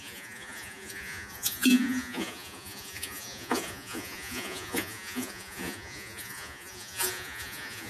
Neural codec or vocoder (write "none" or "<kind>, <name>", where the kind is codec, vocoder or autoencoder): vocoder, Vocos